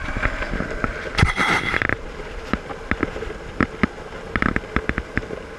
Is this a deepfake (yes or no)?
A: no